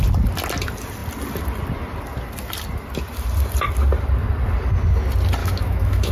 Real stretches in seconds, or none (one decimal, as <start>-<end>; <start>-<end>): 0.0-5.4